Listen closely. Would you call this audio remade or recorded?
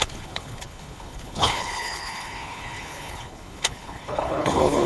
remade